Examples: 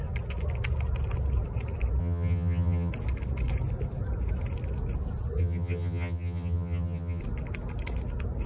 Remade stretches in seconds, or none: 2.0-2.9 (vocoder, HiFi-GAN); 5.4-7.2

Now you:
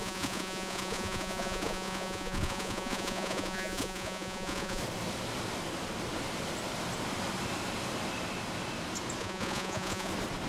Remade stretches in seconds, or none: 0.0-4.8 (vocoder, Vocos); 9.2-10.1